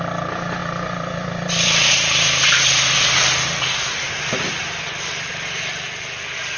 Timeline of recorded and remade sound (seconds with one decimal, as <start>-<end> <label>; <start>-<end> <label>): 0.0-0.6 recorded; 0.6-4.6 remade; 4.6-6.6 recorded